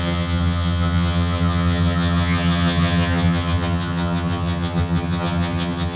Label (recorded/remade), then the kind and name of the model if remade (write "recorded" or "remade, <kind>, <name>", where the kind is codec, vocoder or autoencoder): remade, vocoder, HiFi-GAN